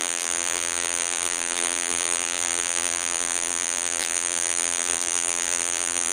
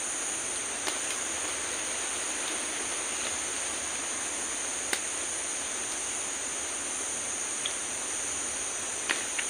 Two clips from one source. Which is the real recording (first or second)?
second